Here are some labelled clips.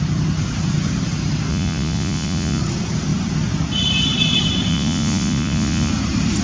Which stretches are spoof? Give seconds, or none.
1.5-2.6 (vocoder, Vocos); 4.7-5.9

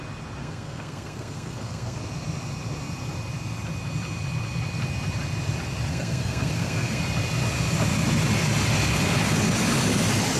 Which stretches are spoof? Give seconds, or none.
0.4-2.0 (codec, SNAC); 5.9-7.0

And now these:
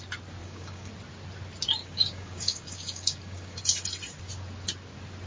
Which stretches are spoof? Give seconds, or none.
0.4-0.9 (codec, DAC); 1.8-3.6

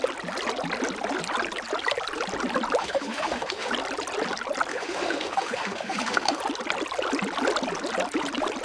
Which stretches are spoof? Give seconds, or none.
2.8-3.7 (autoencoder, DAC-VAE); 4.7-6.4

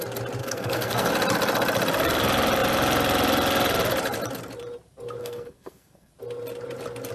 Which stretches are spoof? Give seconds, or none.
0.4-1.1 (codec, SNAC); 5.2-6.1

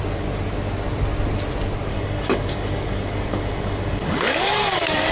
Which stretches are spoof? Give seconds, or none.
1.9-5.1 (codec, DAC)

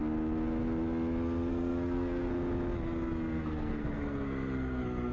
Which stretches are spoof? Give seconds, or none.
1.5-2.3 (codec, SNAC); 3.4-5.1